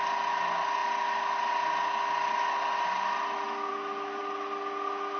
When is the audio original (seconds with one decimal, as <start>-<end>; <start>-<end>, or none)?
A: 0.0-5.2